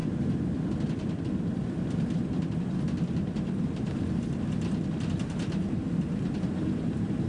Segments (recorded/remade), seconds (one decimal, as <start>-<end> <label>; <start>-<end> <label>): 0.0-7.3 remade